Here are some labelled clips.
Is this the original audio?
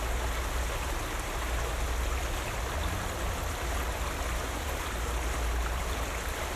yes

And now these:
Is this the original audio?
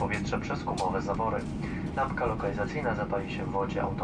yes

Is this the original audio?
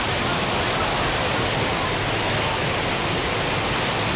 yes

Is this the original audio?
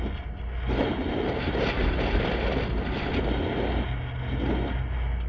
yes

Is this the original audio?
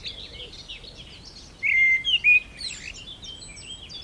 yes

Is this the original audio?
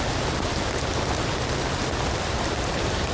yes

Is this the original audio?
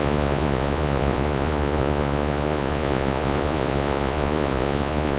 no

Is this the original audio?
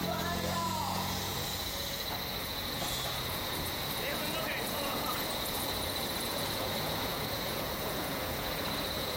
no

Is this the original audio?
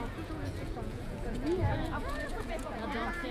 no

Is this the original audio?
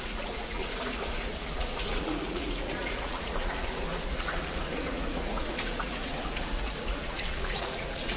no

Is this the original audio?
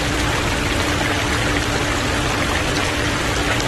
yes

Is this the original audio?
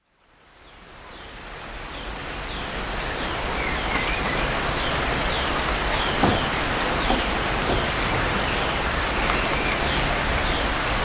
yes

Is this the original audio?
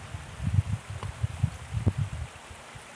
yes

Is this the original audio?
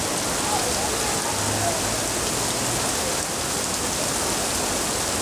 yes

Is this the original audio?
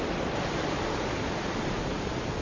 yes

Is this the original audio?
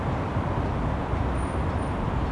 yes